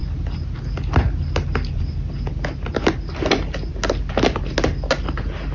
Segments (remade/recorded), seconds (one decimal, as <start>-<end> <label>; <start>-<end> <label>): 0.0-5.5 recorded